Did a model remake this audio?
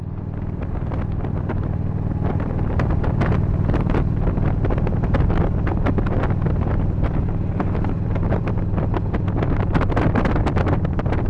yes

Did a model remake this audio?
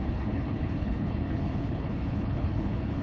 yes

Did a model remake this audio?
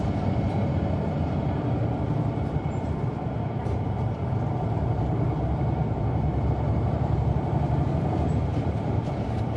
yes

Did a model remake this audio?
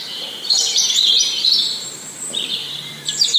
yes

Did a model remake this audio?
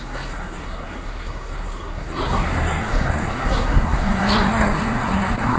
yes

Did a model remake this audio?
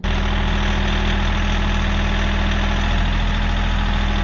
no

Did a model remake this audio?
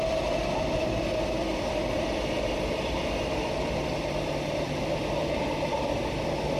yes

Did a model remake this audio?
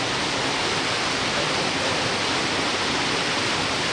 no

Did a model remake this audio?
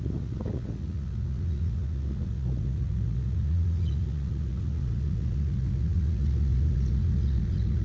yes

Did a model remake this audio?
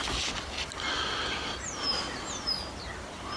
no